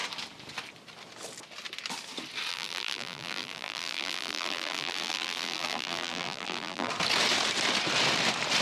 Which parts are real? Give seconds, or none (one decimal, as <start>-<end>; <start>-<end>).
0.0-2.5; 6.9-8.6